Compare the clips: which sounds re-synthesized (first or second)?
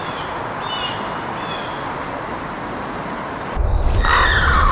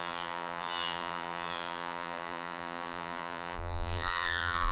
second